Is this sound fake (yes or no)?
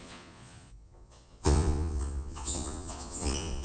yes